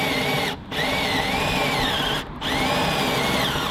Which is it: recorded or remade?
recorded